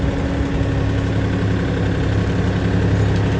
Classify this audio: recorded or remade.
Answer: recorded